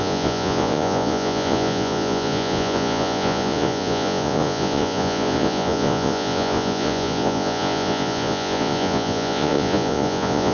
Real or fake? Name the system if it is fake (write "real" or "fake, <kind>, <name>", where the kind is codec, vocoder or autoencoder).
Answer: fake, vocoder, Vocos